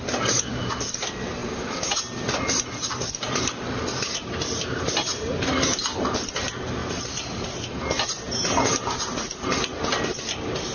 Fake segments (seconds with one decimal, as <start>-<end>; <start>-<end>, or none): 1.4-2.0